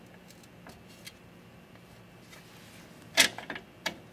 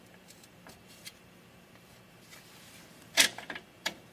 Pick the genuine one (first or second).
first